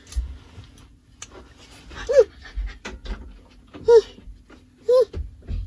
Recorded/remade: recorded